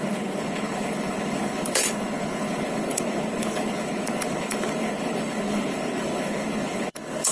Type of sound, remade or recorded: remade